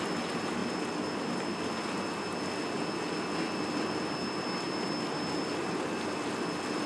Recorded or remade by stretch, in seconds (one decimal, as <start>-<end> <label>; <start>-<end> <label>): 0.0-6.9 recorded